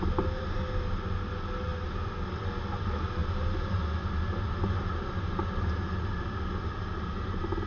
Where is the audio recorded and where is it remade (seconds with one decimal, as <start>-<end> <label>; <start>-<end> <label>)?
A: 0.0-7.7 recorded